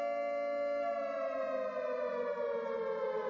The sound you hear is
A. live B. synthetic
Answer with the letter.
A